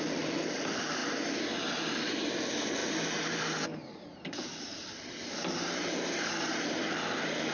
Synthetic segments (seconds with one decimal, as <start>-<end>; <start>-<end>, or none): 0.0-1.0; 1.7-7.5